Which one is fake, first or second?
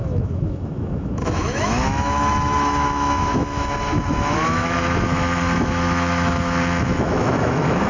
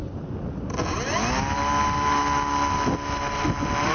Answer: first